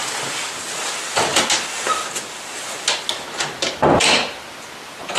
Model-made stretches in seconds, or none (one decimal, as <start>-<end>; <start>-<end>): none